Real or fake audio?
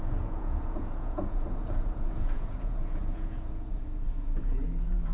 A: fake